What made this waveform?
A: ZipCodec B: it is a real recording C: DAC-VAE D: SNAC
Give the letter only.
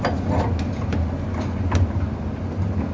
B